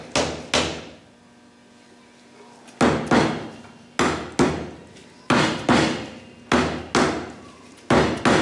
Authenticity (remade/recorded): recorded